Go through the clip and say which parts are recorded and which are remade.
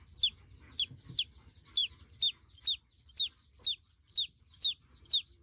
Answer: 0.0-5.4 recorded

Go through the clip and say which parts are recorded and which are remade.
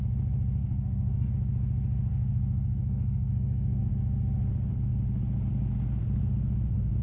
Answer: 0.0-0.6 recorded; 0.6-1.3 remade; 1.3-2.1 recorded; 2.1-3.9 remade; 3.9-7.0 recorded